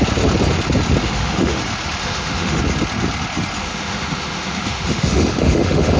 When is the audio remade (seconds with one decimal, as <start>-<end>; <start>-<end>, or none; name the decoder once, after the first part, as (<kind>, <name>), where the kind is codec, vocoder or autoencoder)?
1.0-1.6 (autoencoder, DAC-VAE); 2.0-2.6; 3.6-6.0